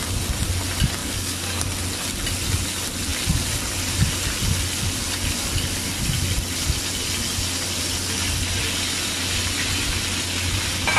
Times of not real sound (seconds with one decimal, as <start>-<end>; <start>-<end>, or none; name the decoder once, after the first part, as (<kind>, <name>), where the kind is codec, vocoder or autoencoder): 1.0-1.6 (codec, DAC)